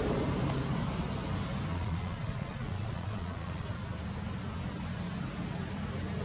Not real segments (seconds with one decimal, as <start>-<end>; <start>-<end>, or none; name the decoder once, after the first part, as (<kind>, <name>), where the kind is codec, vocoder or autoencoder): 1.7-3.7 (vocoder, Vocos)